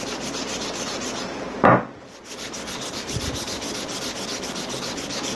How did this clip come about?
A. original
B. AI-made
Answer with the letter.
A